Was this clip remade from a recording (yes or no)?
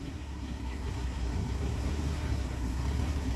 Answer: yes